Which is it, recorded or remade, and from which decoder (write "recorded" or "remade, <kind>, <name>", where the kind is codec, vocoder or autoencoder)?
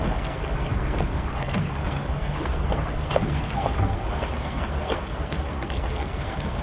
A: remade, codec, SNAC